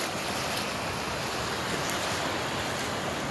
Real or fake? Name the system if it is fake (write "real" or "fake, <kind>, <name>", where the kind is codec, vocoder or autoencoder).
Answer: real